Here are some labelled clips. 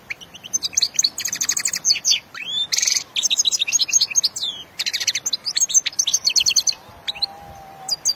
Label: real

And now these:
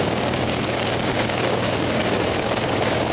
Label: fake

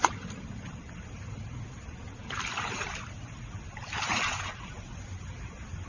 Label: real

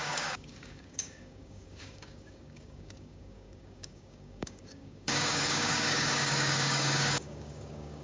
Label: fake